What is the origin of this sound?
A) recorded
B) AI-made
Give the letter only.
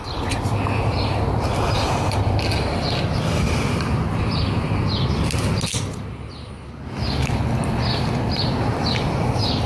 A